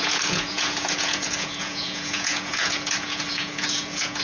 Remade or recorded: remade